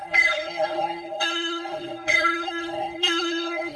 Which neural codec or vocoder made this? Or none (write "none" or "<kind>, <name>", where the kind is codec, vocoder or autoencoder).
codec, SNAC